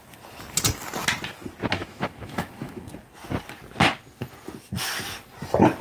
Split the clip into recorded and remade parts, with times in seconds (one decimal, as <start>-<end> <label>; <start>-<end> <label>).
0.0-1.8 recorded; 1.8-2.9 remade; 2.9-5.8 recorded